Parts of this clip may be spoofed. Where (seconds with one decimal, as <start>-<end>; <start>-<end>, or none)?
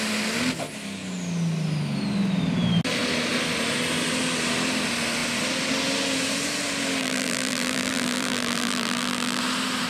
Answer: 7.0-9.4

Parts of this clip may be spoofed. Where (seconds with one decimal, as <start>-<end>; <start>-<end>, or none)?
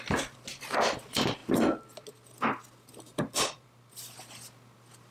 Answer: none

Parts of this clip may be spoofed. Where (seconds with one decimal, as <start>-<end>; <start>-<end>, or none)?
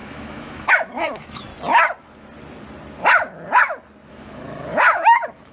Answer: 0.0-1.5; 4.1-5.5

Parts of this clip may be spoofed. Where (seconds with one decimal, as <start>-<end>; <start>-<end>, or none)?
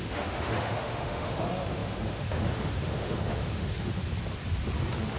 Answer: 0.0-4.0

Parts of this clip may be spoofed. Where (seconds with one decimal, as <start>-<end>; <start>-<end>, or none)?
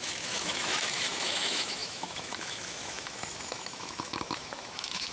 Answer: 0.0-5.1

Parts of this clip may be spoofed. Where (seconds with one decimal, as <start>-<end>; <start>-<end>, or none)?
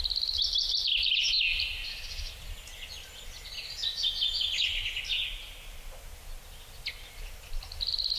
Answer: none